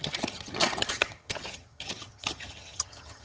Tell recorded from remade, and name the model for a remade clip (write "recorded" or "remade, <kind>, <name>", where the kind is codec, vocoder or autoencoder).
remade, vocoder, HiFi-GAN